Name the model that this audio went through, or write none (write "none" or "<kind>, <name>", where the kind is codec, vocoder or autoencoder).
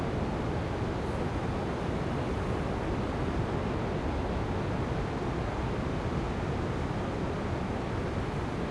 none